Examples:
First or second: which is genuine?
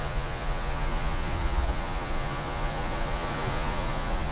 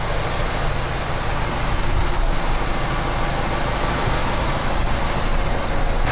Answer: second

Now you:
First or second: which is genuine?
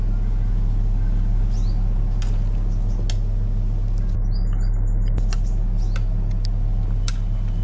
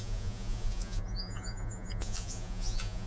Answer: first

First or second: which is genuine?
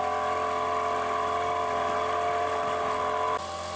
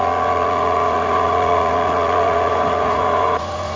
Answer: first